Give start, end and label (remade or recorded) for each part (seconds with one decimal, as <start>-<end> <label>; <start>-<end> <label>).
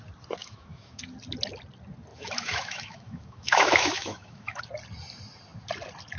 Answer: 0.0-0.4 recorded; 0.4-1.0 remade; 1.0-2.1 recorded; 2.1-4.6 remade; 4.6-6.2 recorded